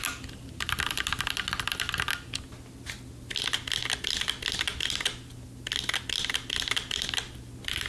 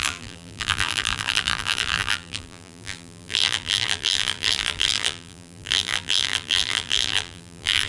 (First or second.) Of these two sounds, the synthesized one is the second